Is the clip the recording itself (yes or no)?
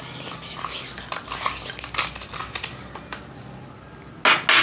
yes